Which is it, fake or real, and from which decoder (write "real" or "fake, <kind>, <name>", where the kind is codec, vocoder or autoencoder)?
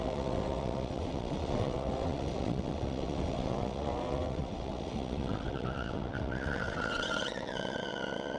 fake, vocoder, WaveNeXt